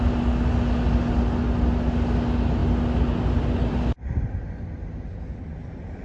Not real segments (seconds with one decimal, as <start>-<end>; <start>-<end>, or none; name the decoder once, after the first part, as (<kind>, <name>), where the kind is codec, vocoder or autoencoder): none